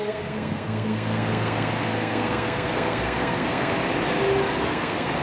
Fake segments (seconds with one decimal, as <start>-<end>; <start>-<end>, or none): 0.0-3.8; 4.6-5.2